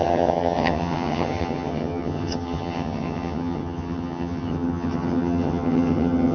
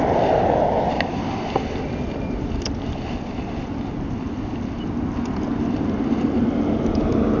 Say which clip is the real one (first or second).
second